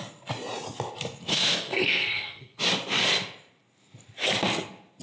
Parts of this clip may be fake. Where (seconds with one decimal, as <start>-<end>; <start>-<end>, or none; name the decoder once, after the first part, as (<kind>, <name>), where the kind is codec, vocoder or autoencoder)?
1.3-2.6 (codec, SNAC)